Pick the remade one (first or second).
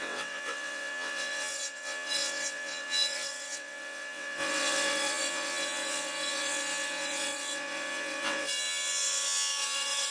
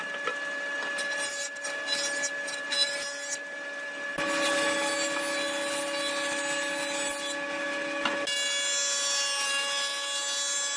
first